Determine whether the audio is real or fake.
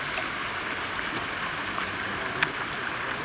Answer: real